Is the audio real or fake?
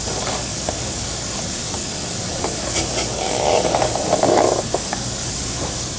fake